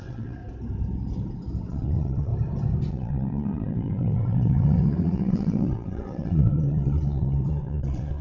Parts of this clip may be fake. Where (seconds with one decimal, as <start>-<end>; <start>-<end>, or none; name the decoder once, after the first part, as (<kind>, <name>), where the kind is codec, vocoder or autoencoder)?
0.0-0.4 (vocoder, WaveNeXt); 1.7-2.3; 2.9-8.2